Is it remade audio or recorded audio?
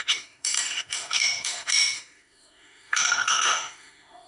remade